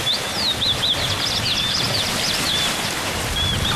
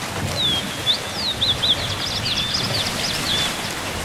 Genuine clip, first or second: second